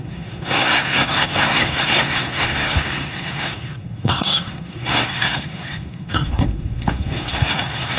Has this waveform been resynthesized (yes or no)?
yes